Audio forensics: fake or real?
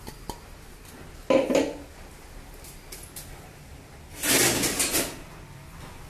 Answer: real